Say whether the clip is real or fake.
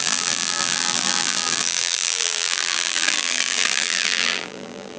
fake